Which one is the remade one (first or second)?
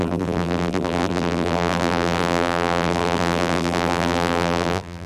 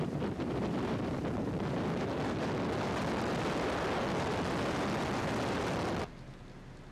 first